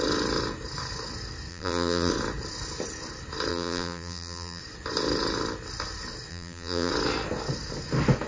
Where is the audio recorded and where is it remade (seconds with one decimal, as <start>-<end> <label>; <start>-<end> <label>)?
0.0-1.5 recorded; 1.5-2.1 remade; 2.1-3.5 recorded; 3.5-4.6 remade; 4.6-6.3 recorded; 6.3-6.9 remade; 6.9-8.3 recorded